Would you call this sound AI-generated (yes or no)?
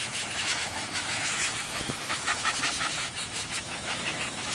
yes